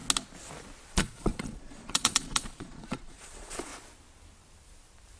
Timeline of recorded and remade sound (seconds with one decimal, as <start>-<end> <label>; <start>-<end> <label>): 0.0-0.9 recorded; 0.9-3.7 remade; 3.7-5.2 recorded